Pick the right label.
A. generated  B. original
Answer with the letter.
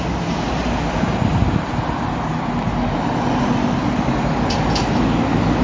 B